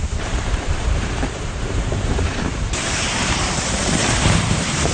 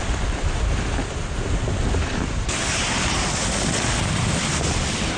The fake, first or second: first